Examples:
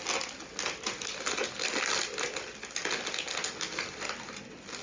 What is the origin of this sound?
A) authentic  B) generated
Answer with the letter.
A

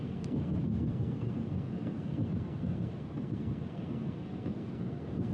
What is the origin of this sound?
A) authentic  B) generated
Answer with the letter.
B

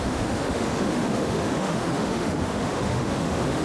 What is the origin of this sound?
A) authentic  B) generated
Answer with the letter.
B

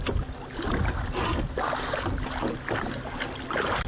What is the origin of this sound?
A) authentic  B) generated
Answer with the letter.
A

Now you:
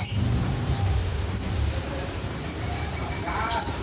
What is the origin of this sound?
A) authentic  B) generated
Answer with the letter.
B